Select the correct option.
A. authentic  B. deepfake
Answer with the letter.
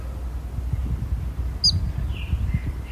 A